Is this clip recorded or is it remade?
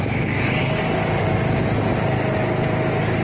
recorded